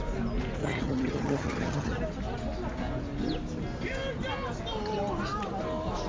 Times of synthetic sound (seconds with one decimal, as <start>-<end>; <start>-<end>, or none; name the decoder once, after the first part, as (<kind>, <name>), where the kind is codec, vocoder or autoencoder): 0.6-2.0 (vocoder, HiFi-GAN)